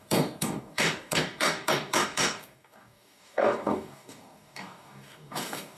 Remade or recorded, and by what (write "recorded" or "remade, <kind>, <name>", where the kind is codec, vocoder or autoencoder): remade, codec, DAC